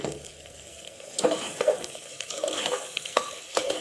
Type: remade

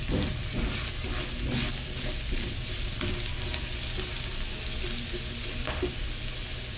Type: recorded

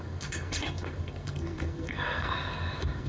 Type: remade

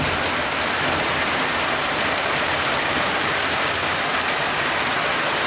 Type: recorded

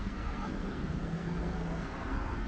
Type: remade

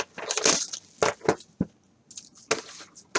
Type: recorded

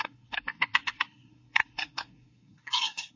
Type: remade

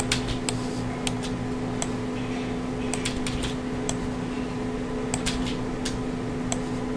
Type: recorded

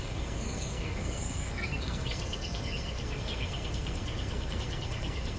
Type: remade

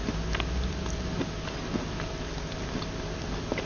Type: recorded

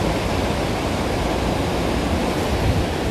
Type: recorded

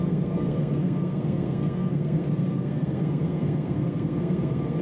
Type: remade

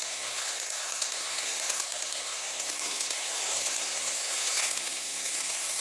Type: remade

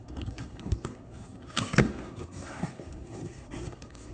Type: remade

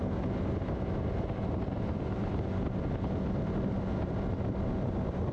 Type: recorded